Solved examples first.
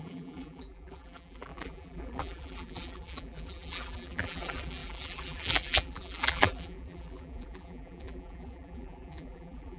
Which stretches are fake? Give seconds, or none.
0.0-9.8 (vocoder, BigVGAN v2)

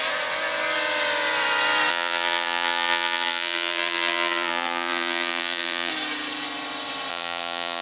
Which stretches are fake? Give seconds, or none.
1.9-5.9 (vocoder, BigVGAN v2); 7.1-7.8

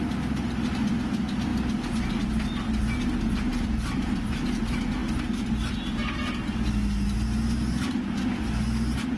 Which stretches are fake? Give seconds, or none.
3.5-4.3 (vocoder, BigVGAN v2)

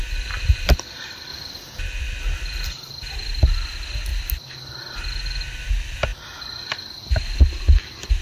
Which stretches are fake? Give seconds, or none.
1.3-1.8 (vocoder, BigVGAN v2); 4.1-5.6

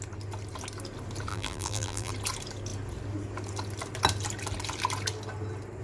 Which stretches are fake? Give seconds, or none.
1.3-2.1 (vocoder, BigVGAN v2)